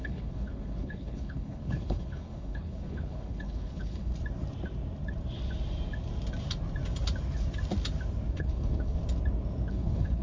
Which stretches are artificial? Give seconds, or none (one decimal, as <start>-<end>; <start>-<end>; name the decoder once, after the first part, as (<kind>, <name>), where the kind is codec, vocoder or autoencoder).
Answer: 0.0-4.1 (codec, HILCodec); 8.3-9.0; 9.7-10.2